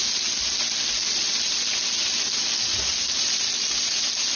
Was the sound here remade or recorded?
recorded